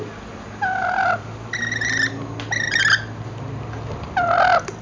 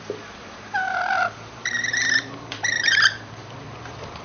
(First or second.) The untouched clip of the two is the first